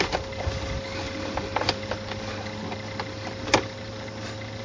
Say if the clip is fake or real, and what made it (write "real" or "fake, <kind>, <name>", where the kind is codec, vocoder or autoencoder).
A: real